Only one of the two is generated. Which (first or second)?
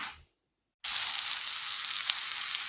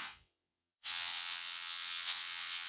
second